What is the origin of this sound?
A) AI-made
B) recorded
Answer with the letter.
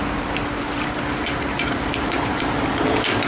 A